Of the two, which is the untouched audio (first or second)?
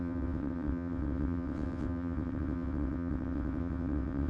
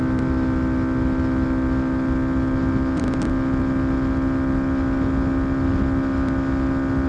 second